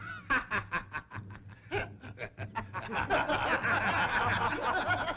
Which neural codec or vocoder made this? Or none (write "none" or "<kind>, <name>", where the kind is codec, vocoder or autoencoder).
none